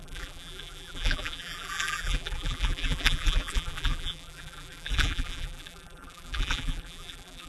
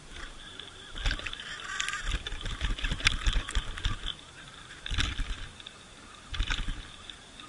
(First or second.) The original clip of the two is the second